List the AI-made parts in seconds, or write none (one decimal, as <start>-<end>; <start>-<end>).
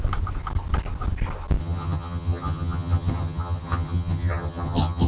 1.6-5.1